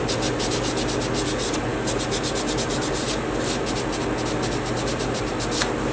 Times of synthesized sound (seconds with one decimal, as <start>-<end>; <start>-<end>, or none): none